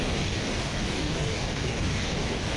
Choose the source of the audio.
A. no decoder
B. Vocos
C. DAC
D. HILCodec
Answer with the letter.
C